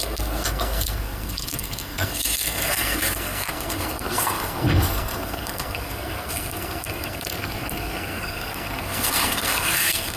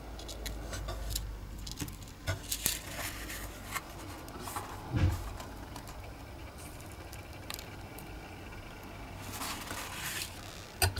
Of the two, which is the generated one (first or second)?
first